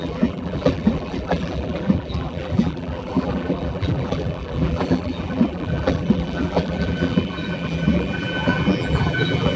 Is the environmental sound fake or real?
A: fake